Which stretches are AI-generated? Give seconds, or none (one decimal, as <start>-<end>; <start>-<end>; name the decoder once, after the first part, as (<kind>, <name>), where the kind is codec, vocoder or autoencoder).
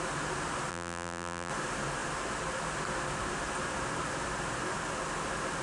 0.7-1.5 (vocoder, BigVGAN v2)